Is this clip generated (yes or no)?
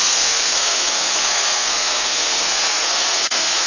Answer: yes